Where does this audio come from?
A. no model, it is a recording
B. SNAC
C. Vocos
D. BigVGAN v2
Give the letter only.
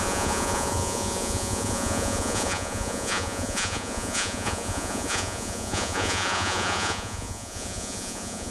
C